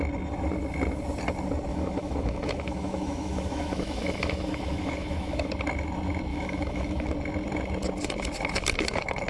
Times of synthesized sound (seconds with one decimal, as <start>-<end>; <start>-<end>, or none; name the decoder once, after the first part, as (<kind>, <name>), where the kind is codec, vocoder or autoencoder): 1.7-5.5 (autoencoder, DAC-VAE); 6.3-7.1